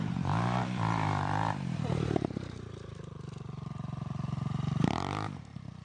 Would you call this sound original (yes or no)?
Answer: no